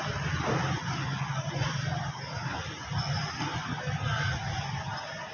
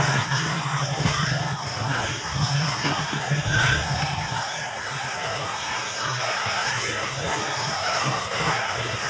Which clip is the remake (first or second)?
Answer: second